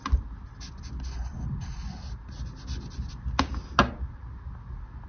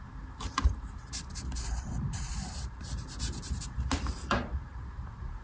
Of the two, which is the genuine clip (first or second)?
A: first